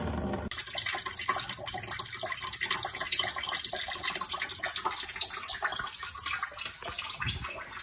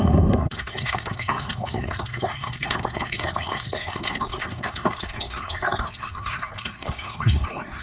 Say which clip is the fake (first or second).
second